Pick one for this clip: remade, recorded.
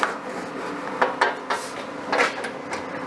recorded